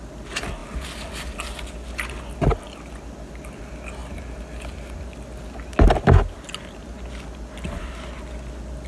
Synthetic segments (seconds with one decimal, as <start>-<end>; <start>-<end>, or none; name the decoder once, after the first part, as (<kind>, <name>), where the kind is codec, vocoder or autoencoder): none